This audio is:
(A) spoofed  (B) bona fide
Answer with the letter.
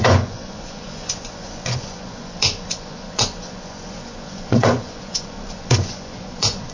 A